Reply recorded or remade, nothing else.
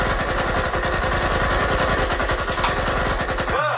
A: recorded